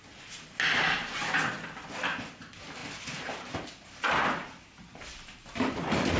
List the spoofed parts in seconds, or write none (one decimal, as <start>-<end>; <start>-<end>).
2.8-5.8